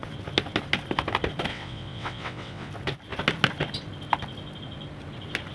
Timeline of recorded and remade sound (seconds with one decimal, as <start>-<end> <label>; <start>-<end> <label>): 0.0-1.5 recorded; 1.5-2.7 remade; 2.7-5.5 recorded